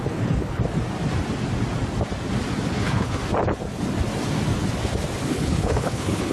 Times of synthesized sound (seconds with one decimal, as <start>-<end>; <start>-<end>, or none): 0.0-0.6; 2.7-3.2; 5.3-6.3